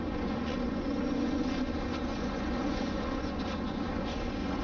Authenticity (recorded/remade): remade